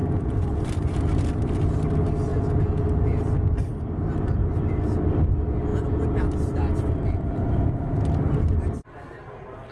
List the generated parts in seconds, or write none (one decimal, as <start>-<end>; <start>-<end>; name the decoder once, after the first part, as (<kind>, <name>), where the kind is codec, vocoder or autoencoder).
0.0-0.6 (vocoder, Vocos); 2.3-2.9; 5.7-6.3